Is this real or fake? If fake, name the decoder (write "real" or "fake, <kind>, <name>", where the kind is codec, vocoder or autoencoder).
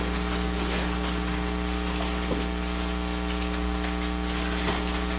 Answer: real